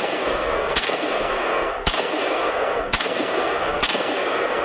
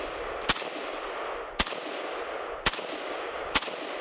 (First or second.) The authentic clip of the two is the second